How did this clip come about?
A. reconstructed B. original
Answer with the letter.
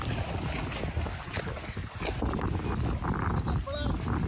B